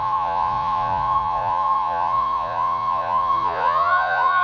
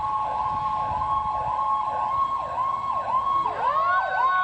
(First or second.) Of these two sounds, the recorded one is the second